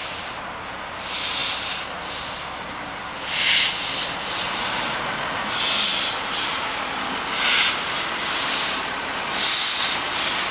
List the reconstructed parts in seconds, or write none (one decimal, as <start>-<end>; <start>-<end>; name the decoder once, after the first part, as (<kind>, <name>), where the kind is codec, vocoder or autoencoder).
none